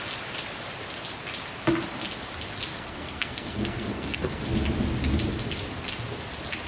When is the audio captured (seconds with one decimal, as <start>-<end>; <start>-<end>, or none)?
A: 0.0-2.7; 4.4-6.7

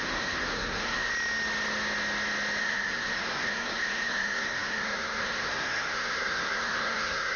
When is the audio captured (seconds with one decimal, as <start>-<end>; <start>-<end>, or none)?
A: 1.1-2.6

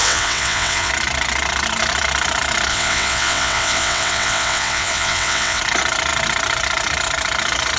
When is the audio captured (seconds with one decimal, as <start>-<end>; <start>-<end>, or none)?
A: 0.9-2.7; 5.6-7.8

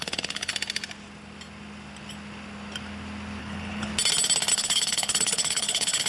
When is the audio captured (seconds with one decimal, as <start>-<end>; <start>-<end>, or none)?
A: 0.5-3.4; 3.9-4.5

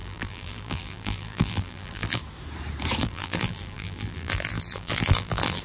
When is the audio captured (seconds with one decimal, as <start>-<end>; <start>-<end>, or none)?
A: 2.2-3.0

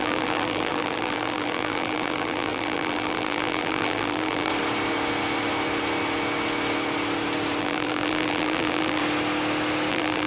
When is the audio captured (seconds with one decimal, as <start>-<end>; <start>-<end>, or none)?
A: 4.5-7.6; 9.0-9.9

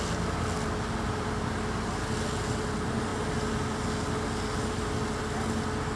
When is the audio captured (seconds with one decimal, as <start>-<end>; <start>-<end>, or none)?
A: 0.0-6.0

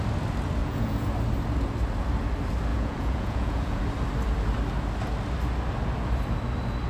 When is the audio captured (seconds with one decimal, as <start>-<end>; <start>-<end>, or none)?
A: 0.0-0.6; 1.1-2.7; 3.8-6.9